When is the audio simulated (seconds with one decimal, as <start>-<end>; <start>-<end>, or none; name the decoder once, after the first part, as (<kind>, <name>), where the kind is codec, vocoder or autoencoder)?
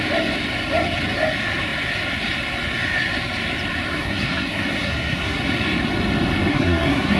3.9-5.4 (codec, SNAC); 6.5-7.2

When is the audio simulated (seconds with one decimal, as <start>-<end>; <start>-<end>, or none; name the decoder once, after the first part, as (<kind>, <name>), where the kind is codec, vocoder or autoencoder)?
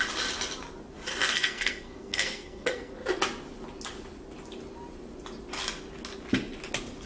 1.1-2.9 (codec, SNAC)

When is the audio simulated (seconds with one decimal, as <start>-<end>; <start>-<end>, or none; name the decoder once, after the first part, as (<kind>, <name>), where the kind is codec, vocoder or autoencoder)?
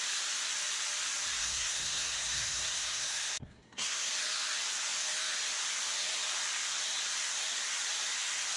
1.4-4.1 (codec, SNAC)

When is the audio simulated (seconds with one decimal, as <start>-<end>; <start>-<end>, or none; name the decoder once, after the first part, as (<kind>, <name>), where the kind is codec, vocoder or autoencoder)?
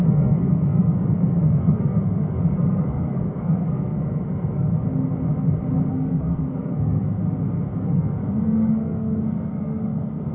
0.0-4.7 (codec, SNAC); 5.9-7.2; 7.8-10.3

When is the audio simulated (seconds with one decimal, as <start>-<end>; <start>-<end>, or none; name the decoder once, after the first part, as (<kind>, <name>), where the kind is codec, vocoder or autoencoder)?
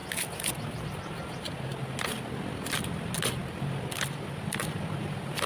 none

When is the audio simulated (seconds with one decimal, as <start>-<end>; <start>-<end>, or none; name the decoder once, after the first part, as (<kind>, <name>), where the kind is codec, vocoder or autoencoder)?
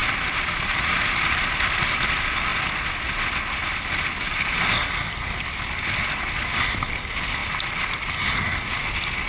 none